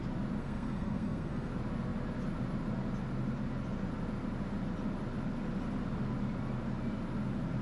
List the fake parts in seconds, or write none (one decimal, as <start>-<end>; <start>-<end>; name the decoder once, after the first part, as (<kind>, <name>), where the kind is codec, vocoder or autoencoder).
0.4-1.5 (codec, SNAC)